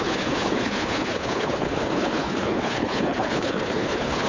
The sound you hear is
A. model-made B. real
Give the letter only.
A